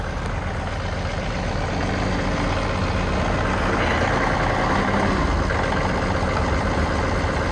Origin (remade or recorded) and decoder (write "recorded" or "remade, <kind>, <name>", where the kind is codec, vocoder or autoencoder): recorded